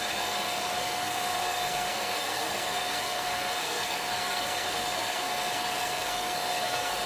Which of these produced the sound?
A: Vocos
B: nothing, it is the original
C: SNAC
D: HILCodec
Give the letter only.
C